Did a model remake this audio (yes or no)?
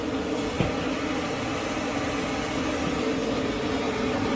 no